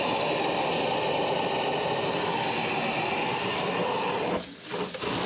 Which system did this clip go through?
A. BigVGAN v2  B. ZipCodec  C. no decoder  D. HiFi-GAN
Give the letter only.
C